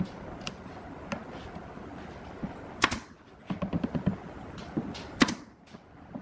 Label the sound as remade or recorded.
recorded